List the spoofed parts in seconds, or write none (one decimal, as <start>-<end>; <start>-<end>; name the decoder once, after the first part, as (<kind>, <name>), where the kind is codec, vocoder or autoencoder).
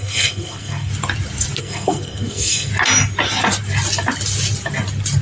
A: 0.0-0.9 (codec, SNAC); 1.6-2.7